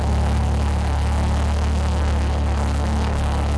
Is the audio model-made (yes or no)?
yes